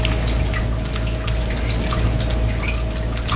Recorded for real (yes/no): yes